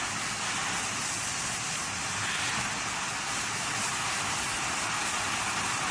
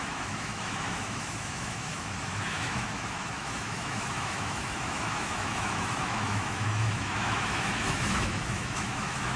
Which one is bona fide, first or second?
first